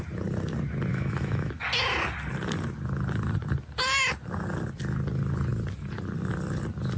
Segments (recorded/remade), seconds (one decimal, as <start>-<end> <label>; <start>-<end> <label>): 0.0-0.9 recorded; 0.9-1.5 remade; 1.5-7.0 recorded